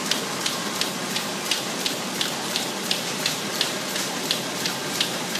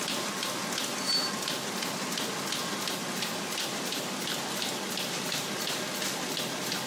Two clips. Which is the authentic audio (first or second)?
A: second